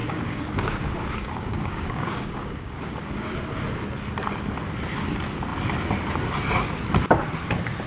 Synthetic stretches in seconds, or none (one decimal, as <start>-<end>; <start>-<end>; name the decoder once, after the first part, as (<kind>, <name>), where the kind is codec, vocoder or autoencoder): 0.0-3.4 (codec, DAC)